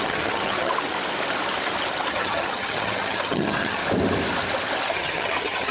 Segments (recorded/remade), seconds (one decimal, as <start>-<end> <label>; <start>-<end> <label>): 0.0-0.7 remade; 0.7-2.1 recorded; 2.1-3.8 remade; 3.8-4.9 recorded; 4.9-5.7 remade